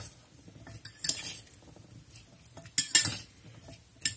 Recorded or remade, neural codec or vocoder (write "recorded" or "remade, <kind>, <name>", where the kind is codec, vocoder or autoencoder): recorded